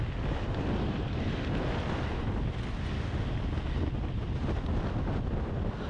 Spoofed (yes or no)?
no